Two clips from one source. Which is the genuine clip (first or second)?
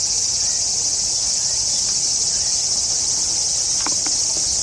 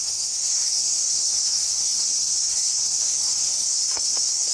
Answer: first